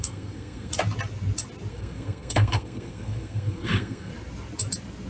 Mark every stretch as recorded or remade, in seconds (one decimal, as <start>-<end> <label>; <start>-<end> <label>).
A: 0.0-0.7 remade; 0.7-1.7 recorded; 1.7-4.1 remade; 4.1-5.1 recorded